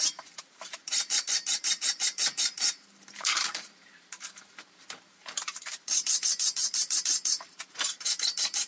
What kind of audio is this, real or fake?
fake